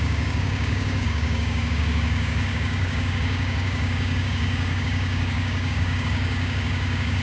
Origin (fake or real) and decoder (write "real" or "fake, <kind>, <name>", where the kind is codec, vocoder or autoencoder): fake, codec, DAC